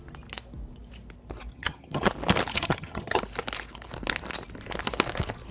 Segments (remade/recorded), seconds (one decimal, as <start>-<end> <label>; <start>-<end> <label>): 0.0-1.5 recorded; 1.5-2.1 remade; 2.1-2.5 recorded; 2.5-3.2 remade; 3.2-5.5 recorded